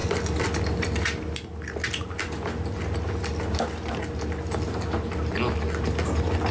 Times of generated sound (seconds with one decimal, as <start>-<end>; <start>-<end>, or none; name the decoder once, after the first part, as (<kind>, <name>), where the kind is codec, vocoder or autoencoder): 0.0-3.9 (vocoder, BigVGAN v2)